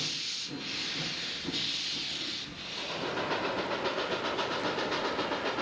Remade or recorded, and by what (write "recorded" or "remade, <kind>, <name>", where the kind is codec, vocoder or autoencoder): recorded